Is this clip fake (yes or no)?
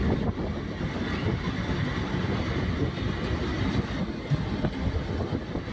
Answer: no